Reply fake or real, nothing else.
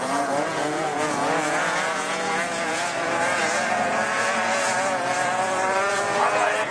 fake